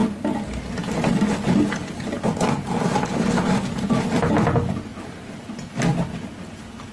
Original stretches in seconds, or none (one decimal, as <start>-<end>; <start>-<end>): 0.0-4.9